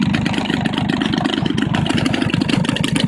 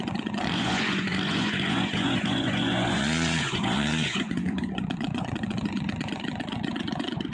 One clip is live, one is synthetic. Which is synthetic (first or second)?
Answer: second